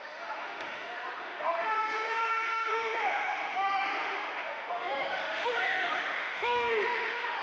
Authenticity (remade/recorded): remade